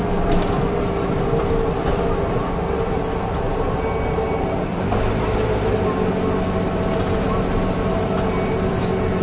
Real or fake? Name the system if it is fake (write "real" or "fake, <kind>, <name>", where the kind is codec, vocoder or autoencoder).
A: real